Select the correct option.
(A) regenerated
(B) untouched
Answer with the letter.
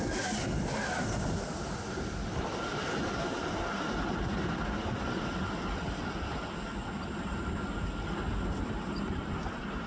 B